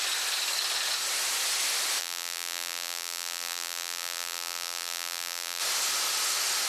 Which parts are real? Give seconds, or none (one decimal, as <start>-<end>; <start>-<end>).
0.0-2.0; 5.6-6.7